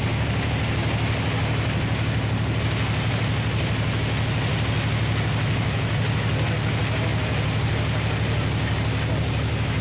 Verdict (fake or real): real